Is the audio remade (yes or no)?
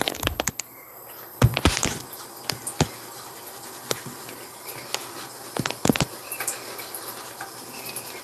no